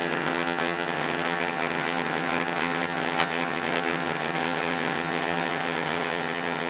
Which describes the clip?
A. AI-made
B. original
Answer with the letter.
A